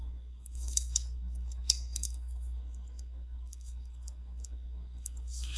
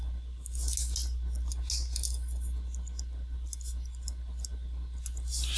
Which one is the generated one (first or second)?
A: first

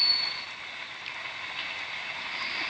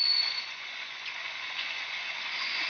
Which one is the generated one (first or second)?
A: second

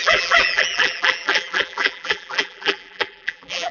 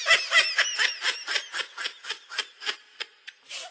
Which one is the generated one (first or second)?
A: first